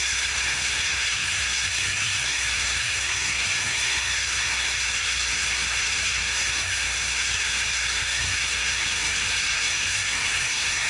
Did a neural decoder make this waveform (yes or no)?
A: yes